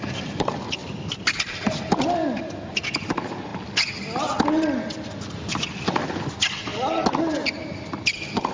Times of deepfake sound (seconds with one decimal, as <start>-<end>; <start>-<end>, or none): none